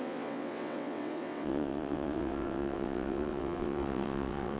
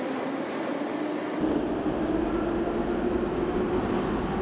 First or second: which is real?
second